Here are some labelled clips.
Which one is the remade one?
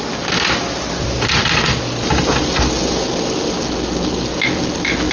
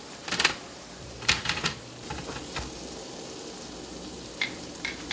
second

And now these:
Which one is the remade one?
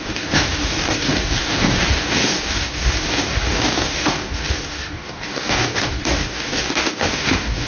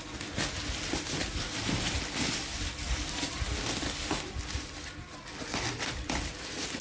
first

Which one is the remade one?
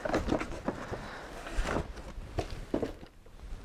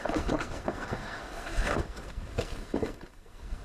second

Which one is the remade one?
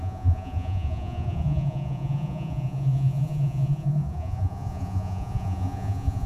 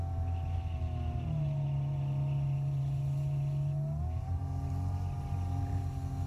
first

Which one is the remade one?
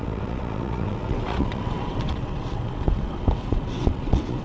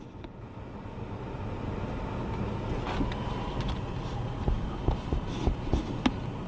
first